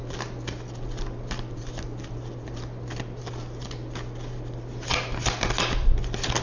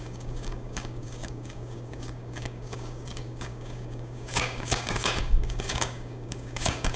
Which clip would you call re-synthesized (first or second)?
second